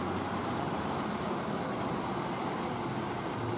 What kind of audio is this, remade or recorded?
recorded